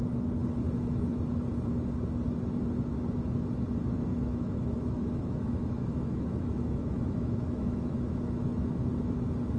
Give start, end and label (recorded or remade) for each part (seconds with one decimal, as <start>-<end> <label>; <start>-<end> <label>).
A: 0.0-4.1 recorded; 4.1-8.8 remade; 8.8-9.6 recorded